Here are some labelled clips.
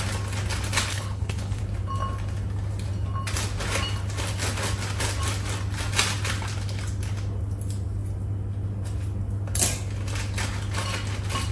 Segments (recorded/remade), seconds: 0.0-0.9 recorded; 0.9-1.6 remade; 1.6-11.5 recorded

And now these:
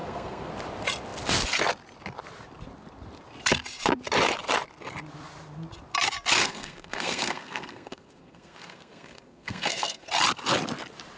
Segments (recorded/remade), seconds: 0.0-0.5 remade; 0.5-6.4 recorded; 6.4-10.1 remade; 10.1-11.2 recorded

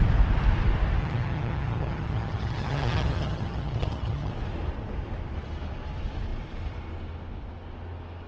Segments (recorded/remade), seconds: 0.0-1.0 recorded; 1.0-4.3 remade; 4.3-8.3 recorded